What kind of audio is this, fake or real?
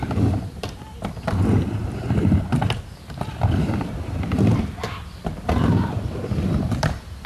fake